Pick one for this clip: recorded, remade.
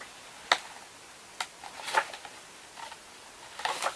recorded